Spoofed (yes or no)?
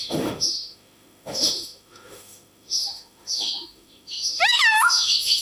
yes